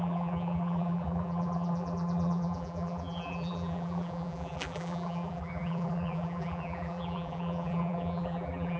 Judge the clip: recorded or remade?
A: remade